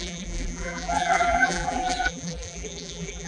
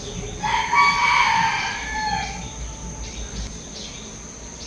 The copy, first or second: first